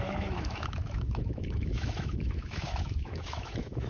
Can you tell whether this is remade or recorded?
remade